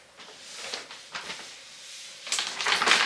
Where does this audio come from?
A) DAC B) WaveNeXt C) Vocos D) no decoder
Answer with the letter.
D